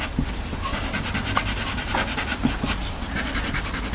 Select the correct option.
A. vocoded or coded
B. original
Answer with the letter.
B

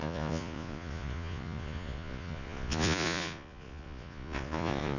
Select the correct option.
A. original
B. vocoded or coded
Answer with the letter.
B